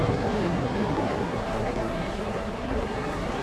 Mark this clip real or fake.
fake